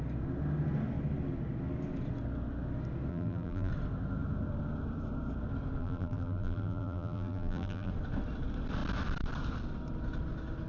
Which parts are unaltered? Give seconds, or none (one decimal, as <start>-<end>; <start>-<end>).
0.0-3.1; 3.7-5.8; 7.9-10.7